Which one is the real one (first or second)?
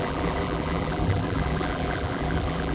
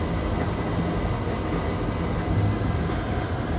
second